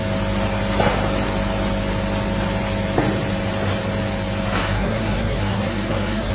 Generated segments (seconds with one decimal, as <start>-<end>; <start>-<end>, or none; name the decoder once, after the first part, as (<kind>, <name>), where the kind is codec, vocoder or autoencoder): 4.6-6.3 (codec, SNAC)